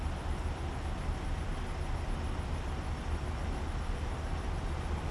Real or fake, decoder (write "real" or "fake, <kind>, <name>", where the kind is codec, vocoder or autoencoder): real